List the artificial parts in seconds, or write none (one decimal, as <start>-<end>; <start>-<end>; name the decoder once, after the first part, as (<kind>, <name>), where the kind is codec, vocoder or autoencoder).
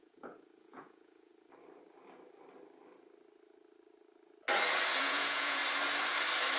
0.0-1.3 (vocoder, Vocos); 5.0-5.6